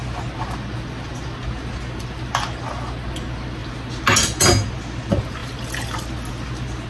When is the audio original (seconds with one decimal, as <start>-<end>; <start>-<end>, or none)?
0.0-6.9